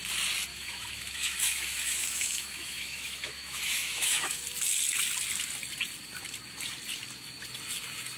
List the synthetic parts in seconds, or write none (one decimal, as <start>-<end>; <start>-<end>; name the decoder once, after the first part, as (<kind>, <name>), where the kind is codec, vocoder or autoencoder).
0.5-4.4 (autoencoder, DAC-VAE)